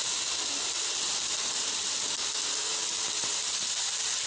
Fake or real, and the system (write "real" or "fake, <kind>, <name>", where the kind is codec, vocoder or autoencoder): fake, vocoder, BigVGAN v2